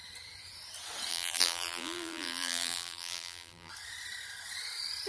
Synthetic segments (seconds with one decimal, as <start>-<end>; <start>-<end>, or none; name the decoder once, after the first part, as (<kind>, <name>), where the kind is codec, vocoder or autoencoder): 1.1-3.7 (vocoder, BigVGAN v2)